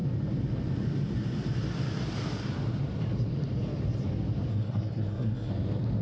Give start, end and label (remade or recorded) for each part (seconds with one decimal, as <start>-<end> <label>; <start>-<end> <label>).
0.0-4.5 recorded; 4.5-5.5 remade; 5.5-6.0 recorded

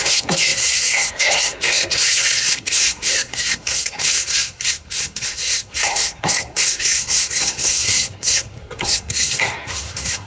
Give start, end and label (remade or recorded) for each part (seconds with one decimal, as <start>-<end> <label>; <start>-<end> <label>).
0.0-10.3 remade

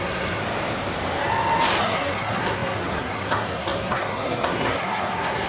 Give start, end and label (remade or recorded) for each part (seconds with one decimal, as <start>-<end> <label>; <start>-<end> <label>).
0.0-0.4 remade; 0.4-1.8 recorded; 1.8-5.5 remade

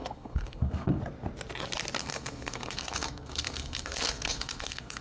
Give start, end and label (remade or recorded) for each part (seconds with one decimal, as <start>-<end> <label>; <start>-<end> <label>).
0.0-1.0 remade; 1.0-2.0 recorded; 2.0-5.0 remade

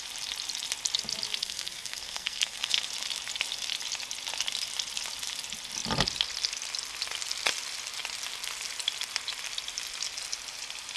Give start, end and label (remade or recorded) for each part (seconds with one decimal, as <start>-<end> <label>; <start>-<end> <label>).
0.0-1.4 recorded; 1.4-2.9 remade; 2.9-11.0 recorded

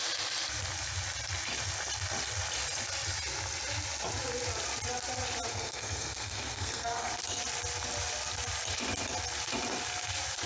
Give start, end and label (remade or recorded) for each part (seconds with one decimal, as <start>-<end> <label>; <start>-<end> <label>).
0.0-5.5 recorded; 5.5-7.1 remade; 7.1-10.5 recorded

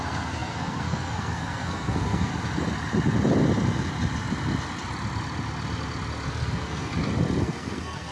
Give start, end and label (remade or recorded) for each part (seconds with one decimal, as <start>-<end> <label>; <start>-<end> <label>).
0.0-2.3 remade; 2.3-6.3 recorded; 6.3-6.9 remade; 6.9-7.4 recorded; 7.4-8.1 remade

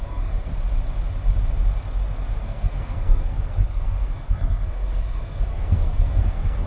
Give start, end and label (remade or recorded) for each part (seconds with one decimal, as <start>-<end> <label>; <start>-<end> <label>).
0.0-0.5 remade; 0.5-2.4 recorded; 2.4-6.7 remade